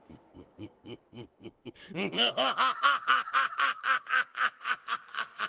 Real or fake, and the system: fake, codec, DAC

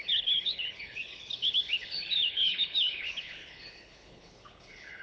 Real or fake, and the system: fake, codec, HILCodec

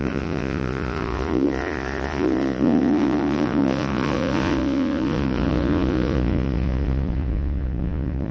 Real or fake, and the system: fake, vocoder, Vocos